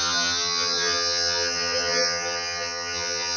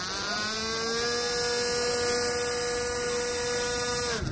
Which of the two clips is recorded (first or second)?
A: second